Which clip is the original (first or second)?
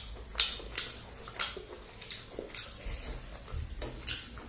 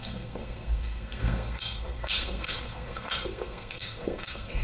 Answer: first